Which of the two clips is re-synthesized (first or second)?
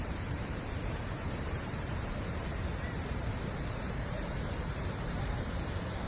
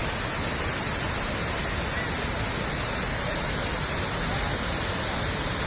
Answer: first